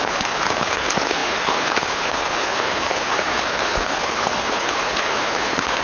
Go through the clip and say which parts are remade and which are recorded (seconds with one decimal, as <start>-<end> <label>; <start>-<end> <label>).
0.0-5.8 remade